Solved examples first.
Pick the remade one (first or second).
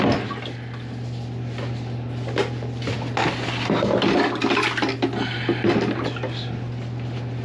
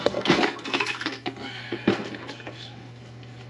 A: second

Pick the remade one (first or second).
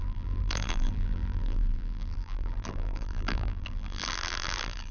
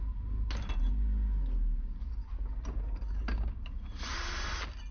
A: first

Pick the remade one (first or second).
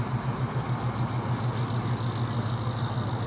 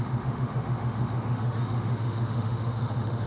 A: second